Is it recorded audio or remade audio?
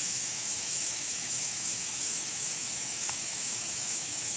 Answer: remade